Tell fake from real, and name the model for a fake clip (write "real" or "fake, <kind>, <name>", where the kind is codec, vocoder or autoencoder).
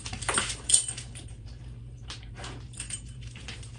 fake, vocoder, BigVGAN v2